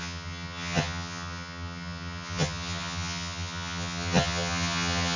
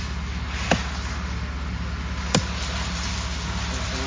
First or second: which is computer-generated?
first